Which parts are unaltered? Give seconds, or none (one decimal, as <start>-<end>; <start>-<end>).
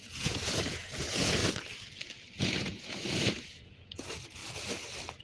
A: 1.4-2.4; 4.4-5.2